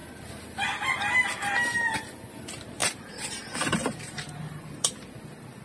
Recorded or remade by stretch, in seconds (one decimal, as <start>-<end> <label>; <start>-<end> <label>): 0.0-2.8 recorded; 2.8-4.9 remade; 4.9-5.6 recorded